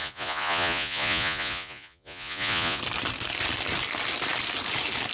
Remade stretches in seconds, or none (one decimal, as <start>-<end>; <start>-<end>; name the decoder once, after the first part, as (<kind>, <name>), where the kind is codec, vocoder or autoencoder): 0.0-2.8 (vocoder, Vocos)

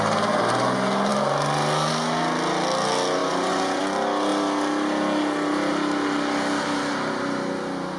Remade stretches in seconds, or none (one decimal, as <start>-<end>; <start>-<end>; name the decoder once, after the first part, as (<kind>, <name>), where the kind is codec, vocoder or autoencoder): 3.2-3.8 (vocoder, Vocos)

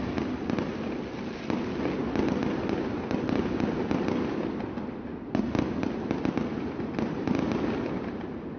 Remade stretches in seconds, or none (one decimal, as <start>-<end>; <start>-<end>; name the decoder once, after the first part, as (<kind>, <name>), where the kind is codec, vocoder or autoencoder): none

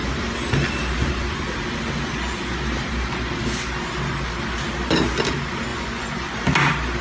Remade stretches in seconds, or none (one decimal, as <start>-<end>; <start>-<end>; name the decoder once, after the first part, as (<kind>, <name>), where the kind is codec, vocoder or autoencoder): 5.7-6.4 (vocoder, Vocos)